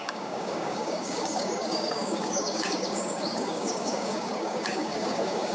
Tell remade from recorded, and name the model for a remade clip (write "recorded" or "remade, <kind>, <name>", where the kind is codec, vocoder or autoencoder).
remade, codec, DAC